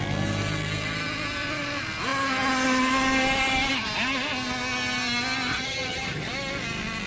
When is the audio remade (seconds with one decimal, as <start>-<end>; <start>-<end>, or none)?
5.5-6.3